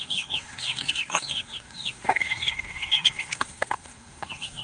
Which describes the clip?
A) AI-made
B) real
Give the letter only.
A